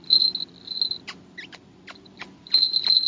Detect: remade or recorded recorded